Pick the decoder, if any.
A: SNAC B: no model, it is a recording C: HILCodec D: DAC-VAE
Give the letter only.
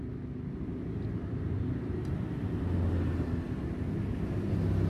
B